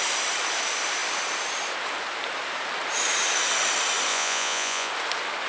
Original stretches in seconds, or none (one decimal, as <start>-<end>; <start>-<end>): 0.0-4.1; 4.9-5.5